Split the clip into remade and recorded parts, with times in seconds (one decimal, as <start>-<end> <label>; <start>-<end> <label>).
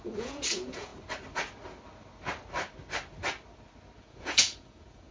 0.0-0.9 remade; 0.9-4.0 recorded; 4.0-5.1 remade